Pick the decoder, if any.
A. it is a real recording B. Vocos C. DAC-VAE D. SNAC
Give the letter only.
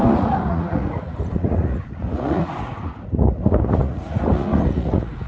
B